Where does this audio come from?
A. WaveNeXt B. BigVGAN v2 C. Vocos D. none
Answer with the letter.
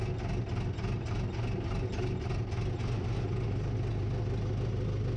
D